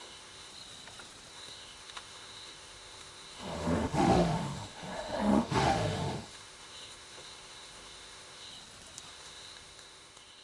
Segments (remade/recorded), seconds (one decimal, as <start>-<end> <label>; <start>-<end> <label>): 0.0-0.5 remade; 0.5-1.3 recorded; 1.3-8.5 remade; 8.5-9.1 recorded; 9.1-10.4 remade